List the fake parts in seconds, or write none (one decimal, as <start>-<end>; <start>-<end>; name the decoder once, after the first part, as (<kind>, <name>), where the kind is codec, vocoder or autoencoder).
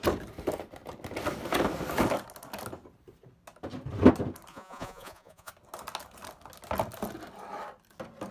4.5-5.5 (vocoder, Vocos)